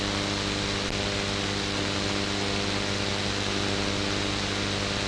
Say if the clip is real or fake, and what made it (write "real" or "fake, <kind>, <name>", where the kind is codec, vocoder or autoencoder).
real